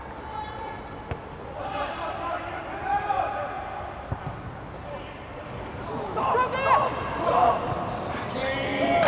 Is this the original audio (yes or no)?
yes